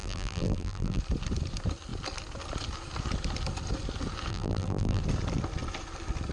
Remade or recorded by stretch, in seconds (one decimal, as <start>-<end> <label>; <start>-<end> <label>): 0.0-1.0 remade; 1.0-4.3 recorded; 4.3-5.0 remade; 5.0-6.3 recorded